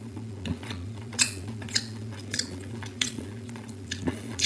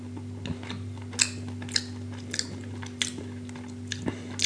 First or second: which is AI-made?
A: first